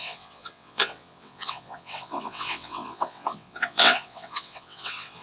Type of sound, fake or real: fake